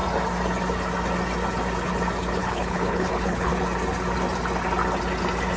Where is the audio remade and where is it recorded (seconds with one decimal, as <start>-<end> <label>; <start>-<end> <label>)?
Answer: 0.0-2.4 recorded; 2.4-3.5 remade; 3.5-5.6 recorded

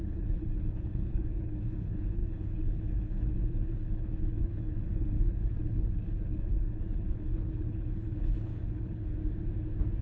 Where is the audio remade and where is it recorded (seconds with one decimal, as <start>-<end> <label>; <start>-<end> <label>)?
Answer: 0.0-9.2 remade; 9.2-10.0 recorded

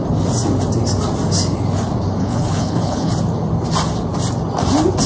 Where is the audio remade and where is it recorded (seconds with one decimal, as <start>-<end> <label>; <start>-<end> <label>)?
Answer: 0.0-2.2 recorded; 2.2-3.1 remade; 3.1-5.1 recorded

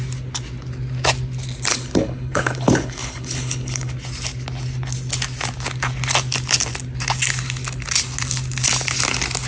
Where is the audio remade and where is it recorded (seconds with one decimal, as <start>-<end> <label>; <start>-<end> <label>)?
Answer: 0.0-1.7 recorded; 1.7-3.9 remade; 3.9-9.5 recorded